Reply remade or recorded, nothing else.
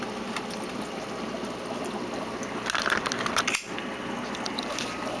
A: recorded